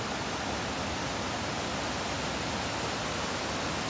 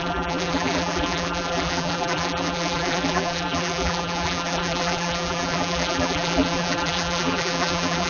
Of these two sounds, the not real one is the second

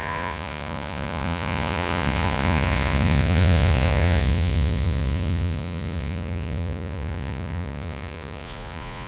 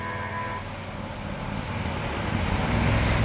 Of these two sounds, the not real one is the first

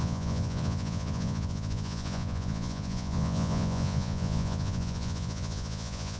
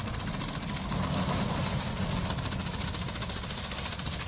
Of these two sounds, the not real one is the first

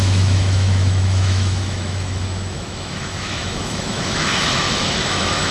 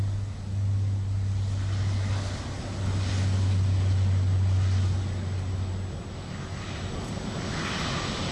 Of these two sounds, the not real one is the first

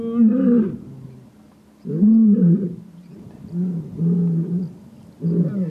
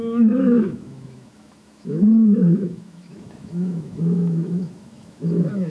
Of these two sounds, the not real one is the second